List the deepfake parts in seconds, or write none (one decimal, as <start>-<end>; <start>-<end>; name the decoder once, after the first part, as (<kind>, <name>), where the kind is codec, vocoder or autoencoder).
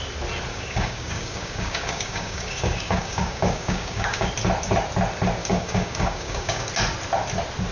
0.5-4.3 (codec, DAC); 5.4-6.7